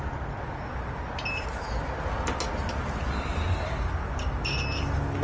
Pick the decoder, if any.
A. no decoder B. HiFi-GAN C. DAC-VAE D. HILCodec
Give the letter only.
A